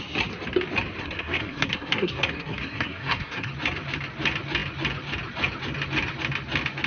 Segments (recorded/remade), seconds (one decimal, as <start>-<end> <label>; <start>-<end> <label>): 0.0-1.0 recorded; 1.0-3.5 remade; 3.5-6.9 recorded